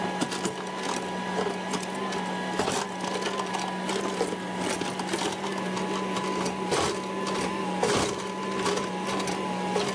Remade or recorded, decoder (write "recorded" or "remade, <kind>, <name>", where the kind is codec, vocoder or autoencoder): recorded